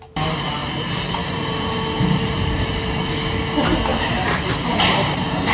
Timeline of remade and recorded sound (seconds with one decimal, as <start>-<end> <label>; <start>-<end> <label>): 0.0-0.6 recorded; 0.6-3.0 remade; 3.0-3.9 recorded; 3.9-4.5 remade; 4.5-5.5 recorded